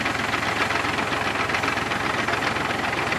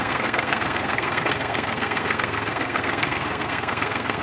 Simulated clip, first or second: second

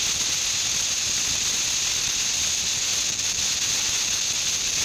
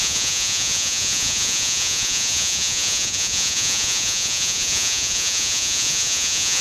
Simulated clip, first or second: second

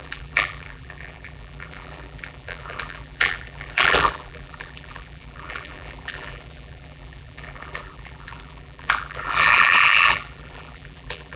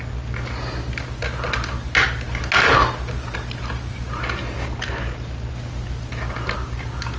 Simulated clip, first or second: first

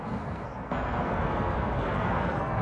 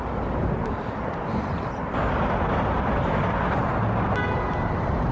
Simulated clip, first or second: first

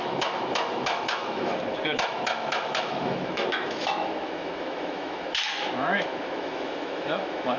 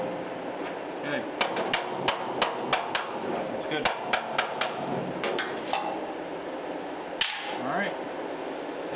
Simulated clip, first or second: first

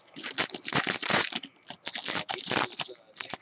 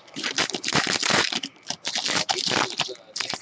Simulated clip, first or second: second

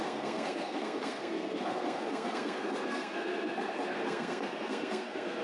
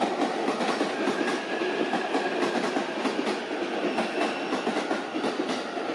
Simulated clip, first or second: first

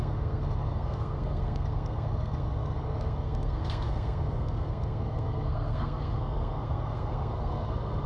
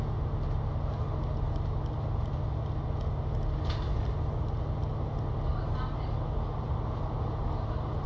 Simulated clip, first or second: first